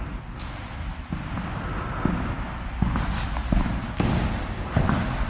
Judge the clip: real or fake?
real